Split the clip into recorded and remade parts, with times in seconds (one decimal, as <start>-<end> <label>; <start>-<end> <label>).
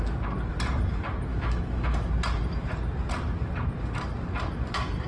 0.0-1.3 recorded; 1.3-2.1 remade; 2.1-5.1 recorded